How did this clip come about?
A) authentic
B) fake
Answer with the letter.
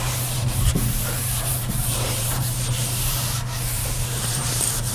B